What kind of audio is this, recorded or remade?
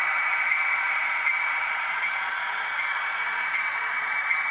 remade